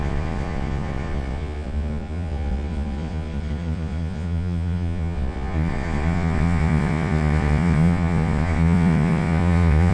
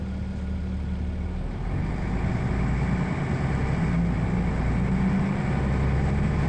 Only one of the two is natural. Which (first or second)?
second